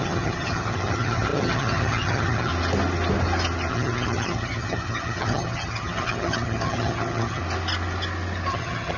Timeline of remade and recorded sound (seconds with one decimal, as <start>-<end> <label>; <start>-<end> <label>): 0.0-2.5 remade; 2.5-3.7 recorded; 3.7-7.4 remade; 7.4-8.5 recorded; 8.5-9.0 remade